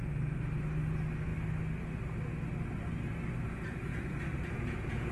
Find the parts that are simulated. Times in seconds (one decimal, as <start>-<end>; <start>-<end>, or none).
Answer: 3.9-5.1